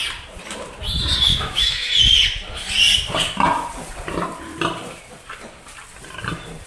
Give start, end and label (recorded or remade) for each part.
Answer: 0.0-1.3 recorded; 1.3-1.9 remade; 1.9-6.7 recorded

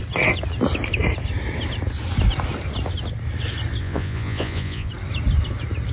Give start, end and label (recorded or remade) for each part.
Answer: 0.0-3.8 recorded; 3.8-4.9 remade; 4.9-5.9 recorded

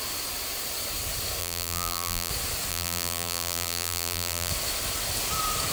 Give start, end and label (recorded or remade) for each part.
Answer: 0.0-1.4 recorded; 1.4-2.3 remade; 2.3-2.7 recorded; 2.7-4.5 remade; 4.5-5.7 recorded

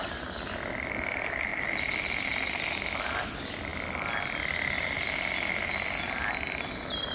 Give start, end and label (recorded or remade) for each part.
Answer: 0.0-7.1 recorded

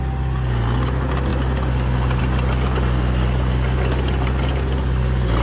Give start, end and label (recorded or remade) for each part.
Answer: 0.0-5.4 recorded